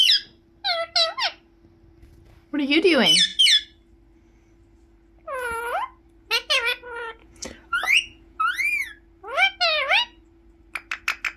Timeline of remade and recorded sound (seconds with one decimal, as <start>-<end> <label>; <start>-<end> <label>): 0.0-7.2 recorded; 7.2-8.4 remade; 8.4-11.4 recorded